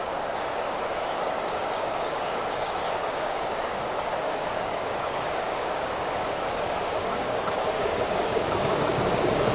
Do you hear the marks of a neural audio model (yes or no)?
yes